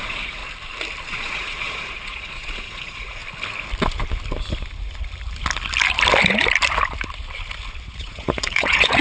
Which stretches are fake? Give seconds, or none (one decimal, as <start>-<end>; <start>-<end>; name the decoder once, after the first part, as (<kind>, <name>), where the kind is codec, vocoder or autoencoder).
0.0-0.4 (vocoder, Vocos); 1.1-3.2; 7.8-9.0